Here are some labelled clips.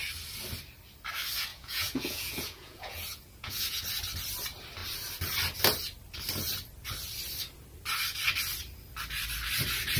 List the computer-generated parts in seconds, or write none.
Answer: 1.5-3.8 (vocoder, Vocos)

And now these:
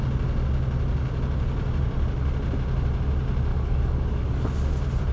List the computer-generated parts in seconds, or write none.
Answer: 3.5-4.4 (codec, DAC)

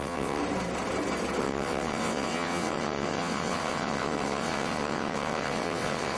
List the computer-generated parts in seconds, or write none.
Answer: 0.0-0.4 (vocoder, WaveNeXt); 1.4-6.2

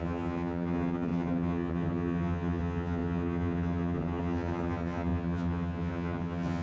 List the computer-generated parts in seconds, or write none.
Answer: 0.0-6.6 (vocoder, HiFi-GAN)

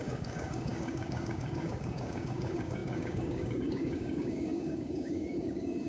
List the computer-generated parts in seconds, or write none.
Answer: 0.0-5.9 (codec, DAC)